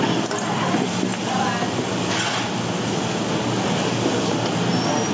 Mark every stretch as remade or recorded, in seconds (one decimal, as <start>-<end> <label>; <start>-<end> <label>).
0.0-5.1 recorded